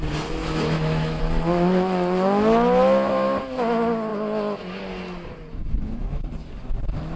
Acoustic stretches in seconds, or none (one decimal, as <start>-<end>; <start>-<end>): 0.0-0.4; 1.2-5.5; 6.2-7.2

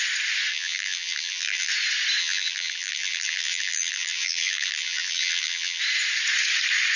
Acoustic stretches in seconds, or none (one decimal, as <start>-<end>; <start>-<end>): 0.0-0.5; 1.7-2.2; 5.8-7.0

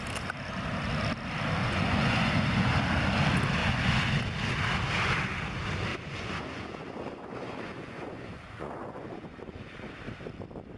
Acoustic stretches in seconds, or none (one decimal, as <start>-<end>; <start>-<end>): 0.0-1.6; 2.7-3.6; 4.1-5.9; 9.9-10.8

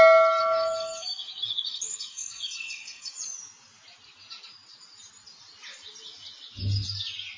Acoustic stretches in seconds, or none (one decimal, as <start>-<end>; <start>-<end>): 0.0-0.4; 3.1-7.4

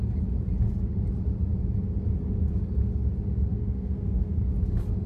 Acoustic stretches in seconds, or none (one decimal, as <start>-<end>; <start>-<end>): 0.0-3.5; 4.5-5.1

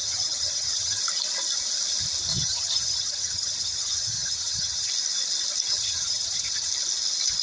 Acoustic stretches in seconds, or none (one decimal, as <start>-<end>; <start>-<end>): 1.0-2.3; 4.9-5.7; 6.7-7.4

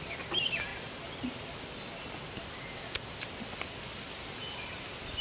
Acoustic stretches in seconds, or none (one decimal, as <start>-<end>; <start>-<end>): 0.0-5.2